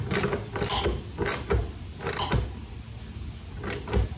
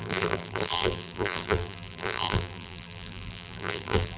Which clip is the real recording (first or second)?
first